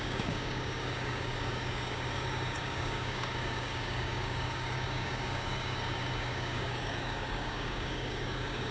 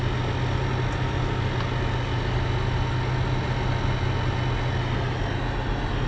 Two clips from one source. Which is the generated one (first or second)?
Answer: first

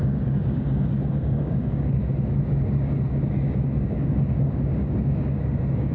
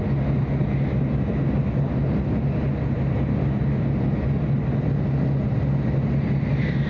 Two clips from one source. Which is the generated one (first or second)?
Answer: first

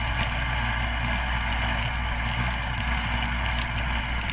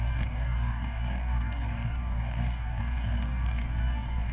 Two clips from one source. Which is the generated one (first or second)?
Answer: second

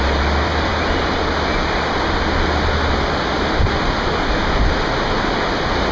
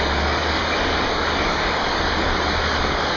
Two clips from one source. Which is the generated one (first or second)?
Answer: second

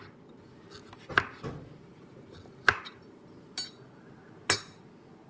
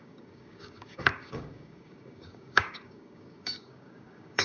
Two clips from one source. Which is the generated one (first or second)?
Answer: second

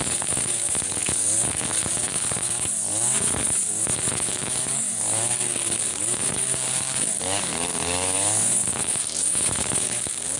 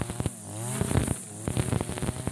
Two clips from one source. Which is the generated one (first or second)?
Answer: first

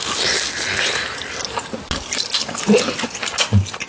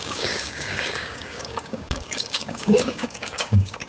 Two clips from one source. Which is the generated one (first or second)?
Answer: second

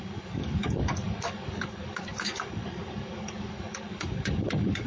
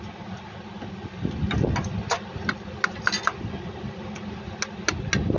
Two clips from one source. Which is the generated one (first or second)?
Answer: first